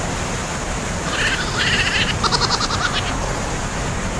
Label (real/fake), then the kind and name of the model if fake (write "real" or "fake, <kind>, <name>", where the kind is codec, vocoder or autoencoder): real